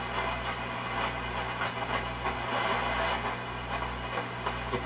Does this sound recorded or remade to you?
recorded